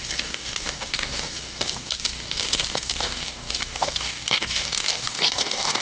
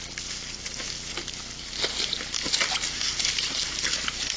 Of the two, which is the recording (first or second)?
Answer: second